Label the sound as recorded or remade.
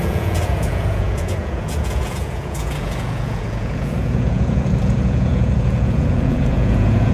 remade